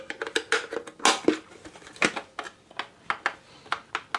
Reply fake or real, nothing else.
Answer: real